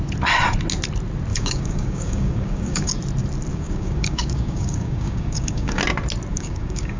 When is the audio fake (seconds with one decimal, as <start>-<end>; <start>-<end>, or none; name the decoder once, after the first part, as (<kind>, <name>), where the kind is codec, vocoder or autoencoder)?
1.3-2.9 (codec, DAC); 3.5-5.8; 6.3-7.0